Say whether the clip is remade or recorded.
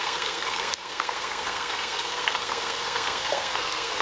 remade